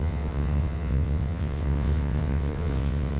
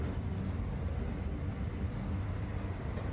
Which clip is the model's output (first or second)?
first